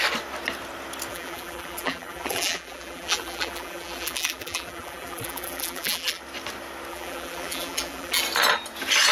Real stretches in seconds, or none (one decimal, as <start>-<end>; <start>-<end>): 0.0-1.1; 6.2-6.9; 8.2-9.1